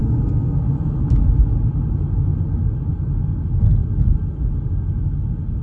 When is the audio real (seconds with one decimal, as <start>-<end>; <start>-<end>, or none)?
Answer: 0.6-5.6

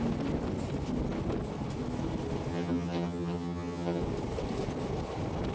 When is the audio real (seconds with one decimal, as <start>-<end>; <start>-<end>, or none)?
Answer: 0.0-2.5; 4.0-5.5